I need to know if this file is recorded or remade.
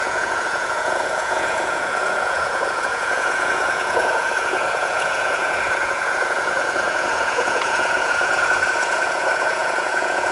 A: remade